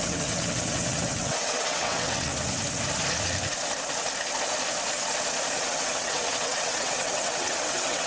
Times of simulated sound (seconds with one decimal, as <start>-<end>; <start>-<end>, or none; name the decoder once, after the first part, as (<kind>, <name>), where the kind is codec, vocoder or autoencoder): 0.0-2.3 (vocoder, WaveNeXt); 5.6-8.1